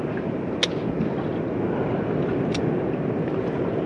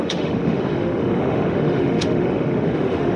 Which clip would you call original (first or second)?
first